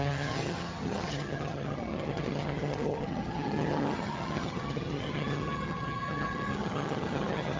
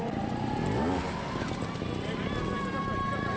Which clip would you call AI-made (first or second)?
first